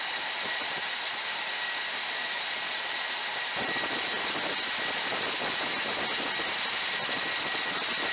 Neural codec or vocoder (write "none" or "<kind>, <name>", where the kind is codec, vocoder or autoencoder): none